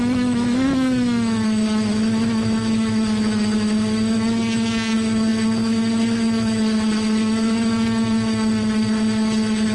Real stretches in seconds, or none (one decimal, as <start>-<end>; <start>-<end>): none